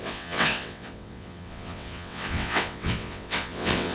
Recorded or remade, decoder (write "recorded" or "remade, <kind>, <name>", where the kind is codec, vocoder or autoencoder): remade, vocoder, WaveNeXt